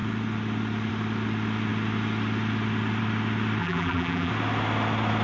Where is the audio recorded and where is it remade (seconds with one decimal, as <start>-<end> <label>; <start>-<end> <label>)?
0.0-3.6 recorded; 3.6-4.3 remade; 4.3-5.2 recorded